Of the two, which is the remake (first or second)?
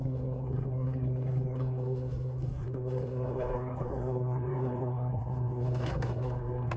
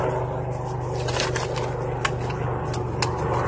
first